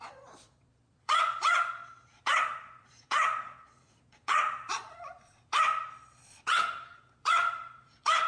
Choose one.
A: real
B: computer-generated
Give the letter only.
B